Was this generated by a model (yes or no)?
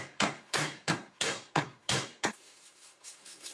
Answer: yes